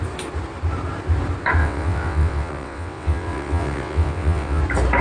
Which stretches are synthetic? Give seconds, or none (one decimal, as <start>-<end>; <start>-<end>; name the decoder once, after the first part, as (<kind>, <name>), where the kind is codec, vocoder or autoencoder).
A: 1.6-4.6 (vocoder, WaveNeXt)